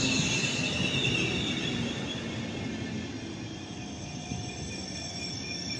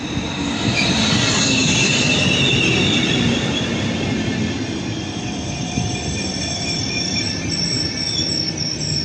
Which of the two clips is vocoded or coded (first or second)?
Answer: second